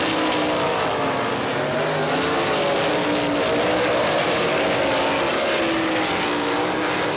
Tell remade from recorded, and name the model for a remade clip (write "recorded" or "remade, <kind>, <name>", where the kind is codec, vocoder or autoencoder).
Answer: recorded